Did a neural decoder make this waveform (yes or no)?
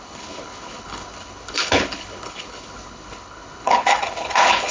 yes